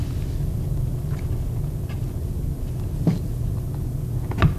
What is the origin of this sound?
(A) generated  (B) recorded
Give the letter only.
B